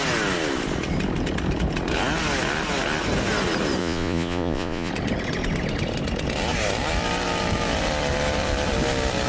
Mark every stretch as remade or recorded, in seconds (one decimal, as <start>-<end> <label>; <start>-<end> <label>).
0.0-3.8 recorded; 3.8-4.9 remade; 4.9-9.3 recorded